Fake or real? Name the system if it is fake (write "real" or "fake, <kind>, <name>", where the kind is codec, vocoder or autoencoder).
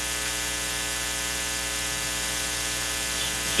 real